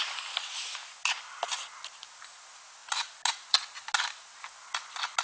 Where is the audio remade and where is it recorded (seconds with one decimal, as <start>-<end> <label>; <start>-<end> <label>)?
0.0-5.2 recorded